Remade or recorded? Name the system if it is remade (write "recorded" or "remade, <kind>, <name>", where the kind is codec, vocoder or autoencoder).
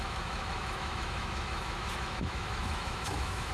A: remade, autoencoder, DAC-VAE